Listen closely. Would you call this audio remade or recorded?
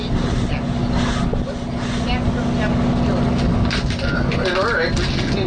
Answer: recorded